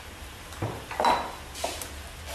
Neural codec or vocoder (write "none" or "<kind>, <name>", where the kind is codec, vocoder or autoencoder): none